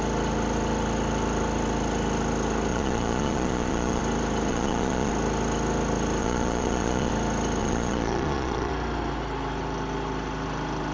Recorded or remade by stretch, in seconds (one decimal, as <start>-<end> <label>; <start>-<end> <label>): 0.0-2.7 recorded; 2.7-4.0 remade; 4.0-4.5 recorded; 4.5-5.1 remade; 5.1-6.2 recorded; 6.2-7.1 remade; 7.1-7.6 recorded; 7.6-8.7 remade; 8.7-10.9 recorded